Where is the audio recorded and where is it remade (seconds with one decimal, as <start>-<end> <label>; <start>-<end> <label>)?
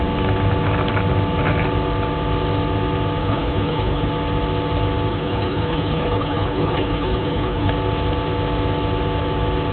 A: 0.0-3.2 recorded; 3.2-4.1 remade; 4.1-5.1 recorded; 5.1-7.7 remade; 7.7-9.7 recorded